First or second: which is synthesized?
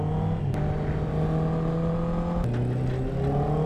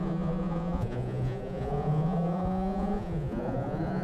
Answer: second